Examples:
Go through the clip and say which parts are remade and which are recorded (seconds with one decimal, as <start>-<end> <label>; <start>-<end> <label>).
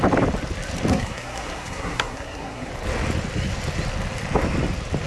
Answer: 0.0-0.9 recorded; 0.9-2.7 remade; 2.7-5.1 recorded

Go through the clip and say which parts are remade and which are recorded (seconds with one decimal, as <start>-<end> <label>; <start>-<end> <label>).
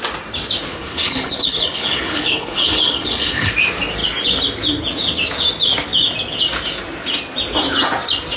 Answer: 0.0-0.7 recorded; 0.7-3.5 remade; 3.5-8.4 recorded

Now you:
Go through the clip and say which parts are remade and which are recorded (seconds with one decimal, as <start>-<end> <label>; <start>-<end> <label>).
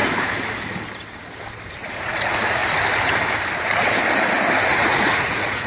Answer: 0.0-1.7 recorded; 1.7-2.6 remade; 2.6-4.7 recorded; 4.7-5.7 remade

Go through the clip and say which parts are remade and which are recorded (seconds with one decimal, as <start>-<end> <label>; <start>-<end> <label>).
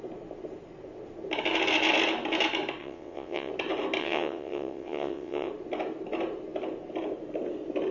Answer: 0.0-2.8 recorded; 2.8-3.5 remade; 3.5-4.0 recorded; 4.0-5.5 remade; 5.5-7.9 recorded